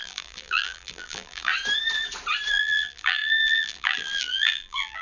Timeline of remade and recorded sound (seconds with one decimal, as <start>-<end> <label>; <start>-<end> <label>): 0.0-1.5 remade; 1.5-2.5 recorded; 2.5-5.0 remade